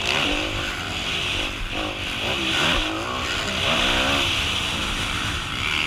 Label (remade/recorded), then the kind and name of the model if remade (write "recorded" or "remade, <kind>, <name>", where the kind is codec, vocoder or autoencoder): recorded